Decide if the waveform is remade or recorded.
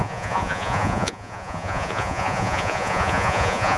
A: remade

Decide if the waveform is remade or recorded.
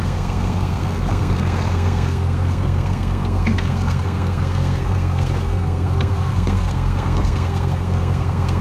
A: remade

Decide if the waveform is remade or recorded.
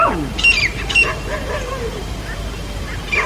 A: remade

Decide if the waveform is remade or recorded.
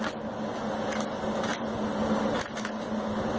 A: recorded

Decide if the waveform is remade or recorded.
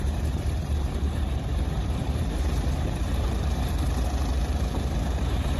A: remade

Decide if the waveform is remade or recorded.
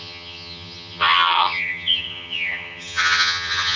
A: remade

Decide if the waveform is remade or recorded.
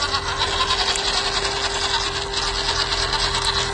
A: recorded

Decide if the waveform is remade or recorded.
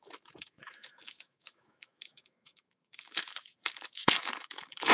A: remade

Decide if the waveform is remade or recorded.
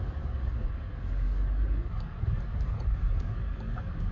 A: remade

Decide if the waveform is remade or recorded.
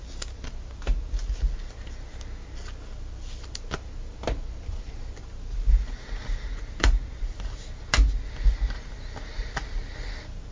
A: recorded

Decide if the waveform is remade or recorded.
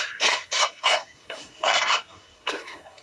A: remade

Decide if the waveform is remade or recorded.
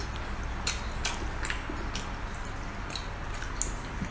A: recorded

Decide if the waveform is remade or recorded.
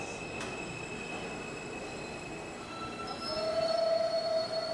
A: recorded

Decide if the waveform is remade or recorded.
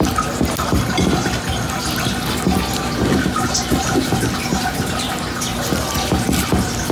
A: recorded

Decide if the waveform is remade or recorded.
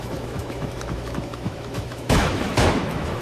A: remade